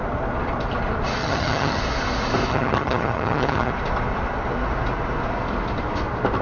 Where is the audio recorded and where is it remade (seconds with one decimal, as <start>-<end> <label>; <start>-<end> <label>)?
0.0-1.2 recorded; 1.2-1.8 remade; 1.8-2.5 recorded; 2.5-3.7 remade; 3.7-6.4 recorded